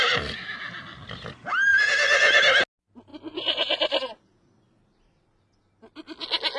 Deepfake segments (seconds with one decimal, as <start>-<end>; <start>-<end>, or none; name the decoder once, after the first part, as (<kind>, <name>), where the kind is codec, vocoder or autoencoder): none